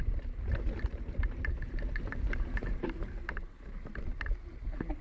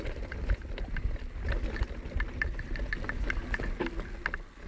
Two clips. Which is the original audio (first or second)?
second